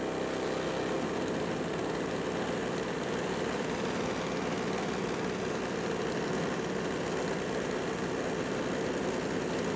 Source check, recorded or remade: recorded